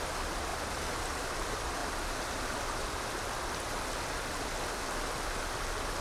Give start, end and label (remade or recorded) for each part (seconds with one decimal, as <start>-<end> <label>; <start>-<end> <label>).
0.0-6.0 recorded